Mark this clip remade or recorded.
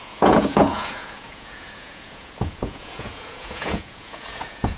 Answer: remade